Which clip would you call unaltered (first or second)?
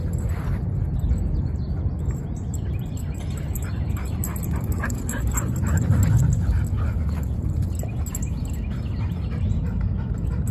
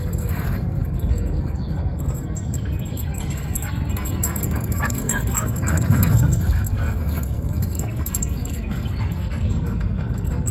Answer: first